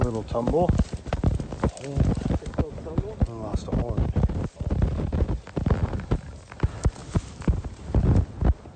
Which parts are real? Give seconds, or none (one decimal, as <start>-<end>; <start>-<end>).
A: 0.0-7.0; 8.0-8.8